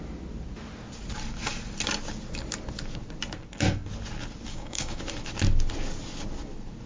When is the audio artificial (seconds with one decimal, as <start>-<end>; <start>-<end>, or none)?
4.5-5.0